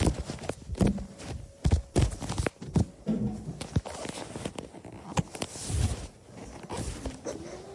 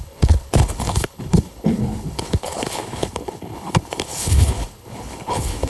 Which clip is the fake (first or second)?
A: second